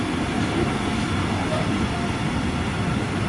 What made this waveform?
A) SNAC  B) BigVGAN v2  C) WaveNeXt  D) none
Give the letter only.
D